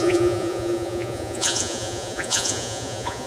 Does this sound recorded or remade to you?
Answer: remade